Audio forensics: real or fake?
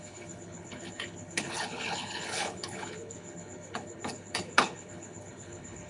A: fake